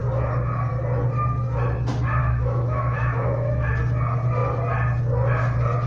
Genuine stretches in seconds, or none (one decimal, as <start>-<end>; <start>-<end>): 0.0-2.2; 3.7-5.9